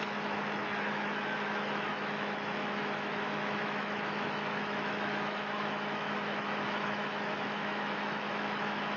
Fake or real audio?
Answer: fake